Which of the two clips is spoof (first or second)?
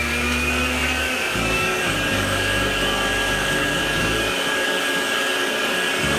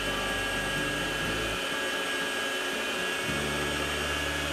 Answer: first